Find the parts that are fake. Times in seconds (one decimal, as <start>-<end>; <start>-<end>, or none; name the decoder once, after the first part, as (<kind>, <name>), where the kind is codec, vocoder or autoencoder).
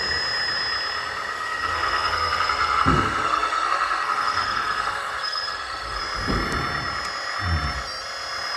1.3-6.0 (codec, SNAC)